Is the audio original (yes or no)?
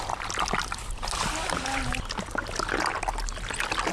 yes